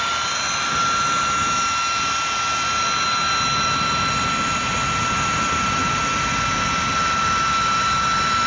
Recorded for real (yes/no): yes